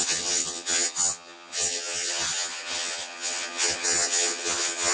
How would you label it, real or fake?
fake